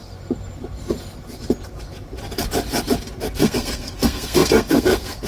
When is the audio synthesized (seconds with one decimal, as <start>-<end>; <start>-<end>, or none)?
3.2-5.3